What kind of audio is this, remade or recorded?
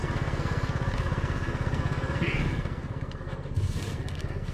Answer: remade